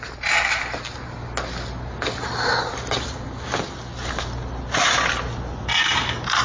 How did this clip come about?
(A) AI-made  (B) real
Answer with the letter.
B